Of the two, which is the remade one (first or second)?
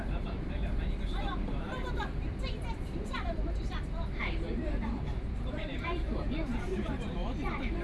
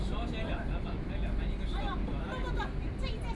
first